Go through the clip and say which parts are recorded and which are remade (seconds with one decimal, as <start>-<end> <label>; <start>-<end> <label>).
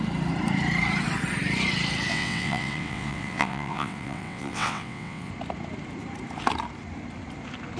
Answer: 0.0-2.1 recorded; 2.1-5.3 remade; 5.3-7.8 recorded